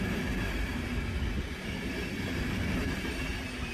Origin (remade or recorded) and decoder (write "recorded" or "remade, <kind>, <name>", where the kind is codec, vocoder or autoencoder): recorded